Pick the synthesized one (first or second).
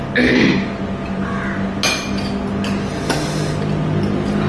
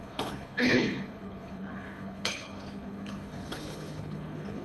second